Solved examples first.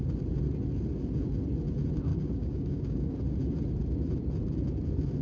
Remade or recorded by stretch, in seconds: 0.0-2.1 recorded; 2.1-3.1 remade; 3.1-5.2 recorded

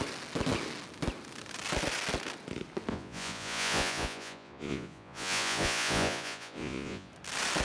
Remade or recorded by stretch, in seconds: 0.0-2.9 recorded; 2.9-7.1 remade; 7.1-7.6 recorded

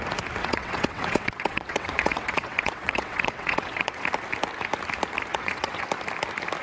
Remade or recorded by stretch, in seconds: 0.0-0.4 recorded; 0.4-4.0 remade; 4.0-5.3 recorded; 5.3-5.8 remade; 5.8-6.6 recorded

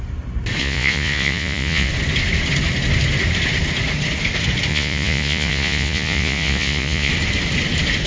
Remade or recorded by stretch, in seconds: 0.0-0.6 recorded; 0.6-1.9 remade; 1.9-4.7 recorded; 4.7-7.1 remade; 7.1-8.1 recorded

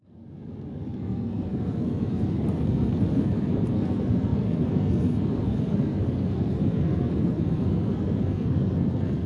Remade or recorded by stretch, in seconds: 0.0-9.3 remade